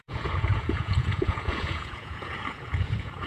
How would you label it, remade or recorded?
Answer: remade